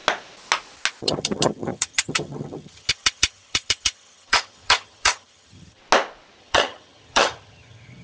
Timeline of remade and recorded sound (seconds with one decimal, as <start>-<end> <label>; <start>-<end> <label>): 0.0-1.0 recorded; 1.0-5.8 remade; 5.8-6.4 recorded; 6.4-8.0 remade